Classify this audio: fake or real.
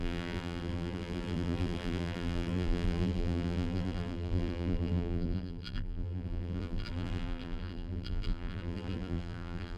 fake